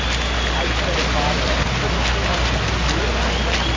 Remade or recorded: recorded